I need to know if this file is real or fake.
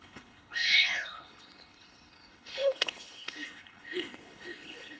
fake